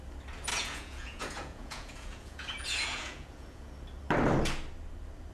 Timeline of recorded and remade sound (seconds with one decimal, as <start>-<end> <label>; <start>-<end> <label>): 0.0-0.5 recorded; 0.5-3.7 remade; 3.7-5.3 recorded